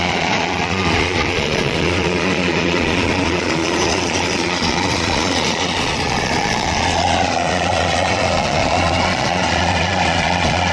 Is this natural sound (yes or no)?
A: no